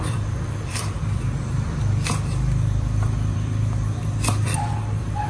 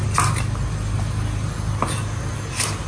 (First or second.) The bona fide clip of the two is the second